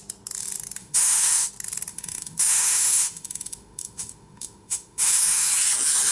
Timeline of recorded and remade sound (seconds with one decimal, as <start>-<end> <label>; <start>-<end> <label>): 0.0-0.8 recorded; 0.8-1.5 remade; 1.5-1.9 recorded; 1.9-5.5 remade; 5.5-6.1 recorded